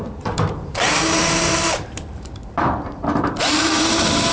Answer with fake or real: fake